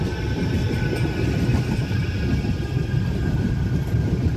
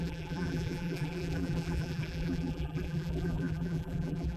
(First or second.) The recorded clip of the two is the first